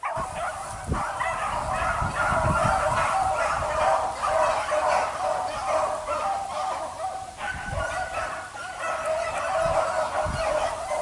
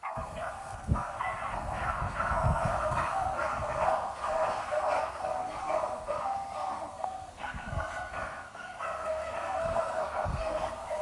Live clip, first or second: first